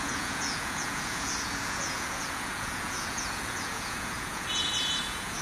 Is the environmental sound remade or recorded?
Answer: remade